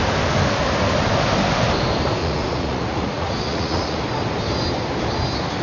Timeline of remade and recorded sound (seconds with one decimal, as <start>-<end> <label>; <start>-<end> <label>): 0.0-2.2 recorded; 2.2-4.0 remade; 4.0-5.6 recorded